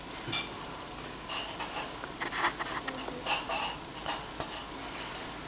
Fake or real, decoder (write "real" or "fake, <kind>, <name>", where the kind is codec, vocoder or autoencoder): real